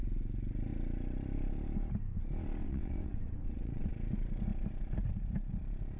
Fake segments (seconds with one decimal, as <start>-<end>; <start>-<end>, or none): 2.6-3.9